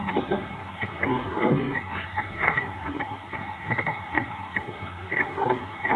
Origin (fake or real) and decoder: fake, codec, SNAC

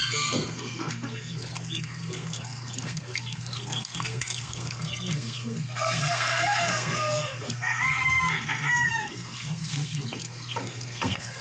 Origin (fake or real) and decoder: fake, codec, SNAC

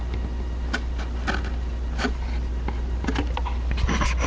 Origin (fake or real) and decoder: real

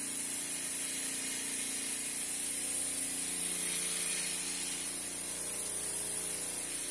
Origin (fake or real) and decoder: real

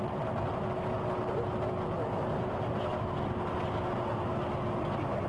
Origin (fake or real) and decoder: real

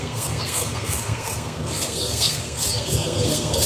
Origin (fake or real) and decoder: fake, codec, SNAC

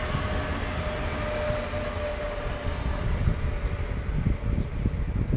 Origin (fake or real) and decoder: real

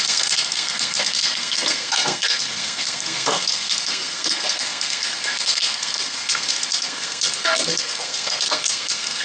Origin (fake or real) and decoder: fake, codec, SNAC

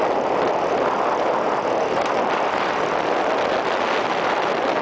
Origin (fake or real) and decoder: real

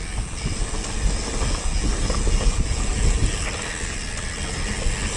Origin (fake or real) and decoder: real